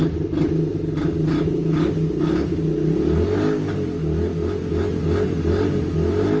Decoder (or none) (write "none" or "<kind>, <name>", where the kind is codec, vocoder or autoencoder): none